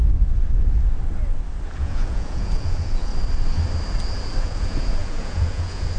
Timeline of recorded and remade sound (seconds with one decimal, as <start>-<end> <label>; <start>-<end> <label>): 0.0-1.8 recorded; 1.8-3.1 remade; 3.1-4.4 recorded; 4.4-6.0 remade